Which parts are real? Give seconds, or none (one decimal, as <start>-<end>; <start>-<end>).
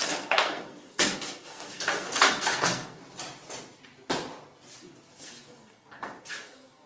3.0-5.2